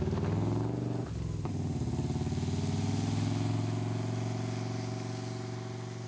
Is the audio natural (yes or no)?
yes